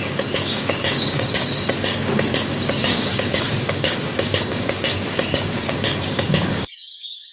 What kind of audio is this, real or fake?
fake